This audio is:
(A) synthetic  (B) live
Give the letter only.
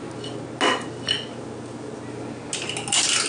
B